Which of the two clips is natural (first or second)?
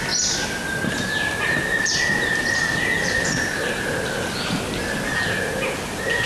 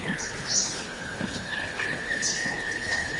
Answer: first